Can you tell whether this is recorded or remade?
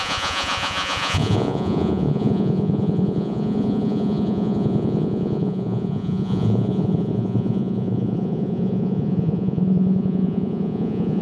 remade